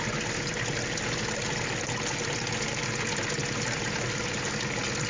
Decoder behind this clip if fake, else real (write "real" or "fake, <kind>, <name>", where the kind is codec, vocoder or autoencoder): real